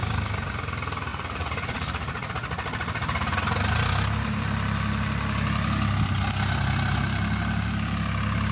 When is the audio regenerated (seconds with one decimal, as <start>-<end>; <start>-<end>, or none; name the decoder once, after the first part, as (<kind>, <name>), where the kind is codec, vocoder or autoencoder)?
1.1-2.3 (vocoder, Vocos)